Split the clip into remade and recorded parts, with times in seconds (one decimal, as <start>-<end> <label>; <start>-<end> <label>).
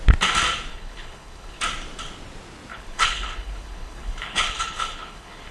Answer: 0.0-0.7 recorded; 0.7-1.6 remade; 1.6-2.7 recorded; 2.7-5.5 remade